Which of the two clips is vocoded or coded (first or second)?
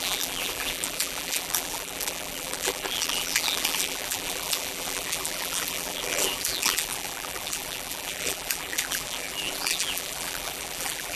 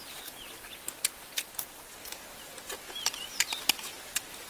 first